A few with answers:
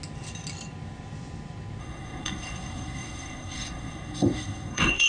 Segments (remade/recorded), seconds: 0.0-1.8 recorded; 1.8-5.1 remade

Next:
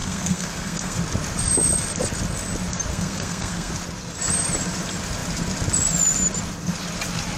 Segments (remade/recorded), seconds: 0.0-1.0 remade; 1.0-2.9 recorded; 2.9-3.7 remade; 3.7-7.4 recorded

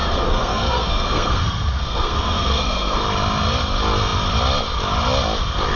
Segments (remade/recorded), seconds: 0.0-3.0 remade; 3.0-5.8 recorded

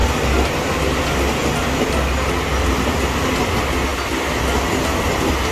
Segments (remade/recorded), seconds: 0.0-5.5 recorded